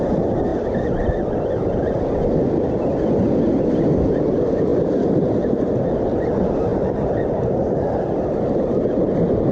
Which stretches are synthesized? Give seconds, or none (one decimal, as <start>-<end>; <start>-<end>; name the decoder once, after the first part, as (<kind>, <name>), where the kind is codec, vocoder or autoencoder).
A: 4.7-5.4 (vocoder, BigVGAN v2); 6.7-9.0